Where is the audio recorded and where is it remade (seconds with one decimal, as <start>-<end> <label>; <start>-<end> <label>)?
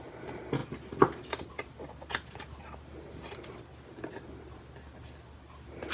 0.0-5.9 recorded